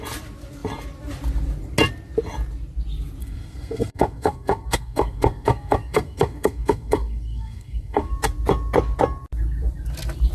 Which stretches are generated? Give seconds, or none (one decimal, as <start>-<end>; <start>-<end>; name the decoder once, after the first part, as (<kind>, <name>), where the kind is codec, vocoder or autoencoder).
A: 3.2-8.1 (codec, SNAC)